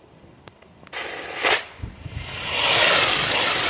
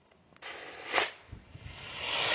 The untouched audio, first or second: second